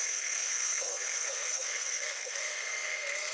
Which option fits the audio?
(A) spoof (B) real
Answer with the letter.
A